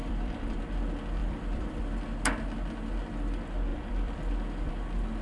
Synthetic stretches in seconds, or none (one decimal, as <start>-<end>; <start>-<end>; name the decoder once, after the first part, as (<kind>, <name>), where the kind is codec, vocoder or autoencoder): 0.0-0.6 (vocoder, BigVGAN v2); 1.2-1.8; 3.7-4.7